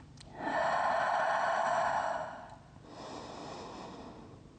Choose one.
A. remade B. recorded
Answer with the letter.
B